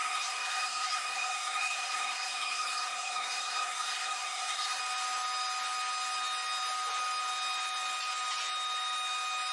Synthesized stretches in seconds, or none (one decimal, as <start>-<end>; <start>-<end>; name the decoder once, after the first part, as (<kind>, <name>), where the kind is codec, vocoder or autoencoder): 0.0-4.8 (codec, SNAC)